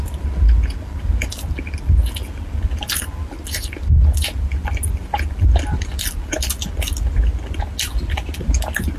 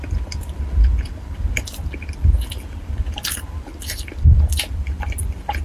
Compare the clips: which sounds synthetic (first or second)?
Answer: second